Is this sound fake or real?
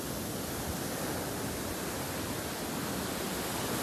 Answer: real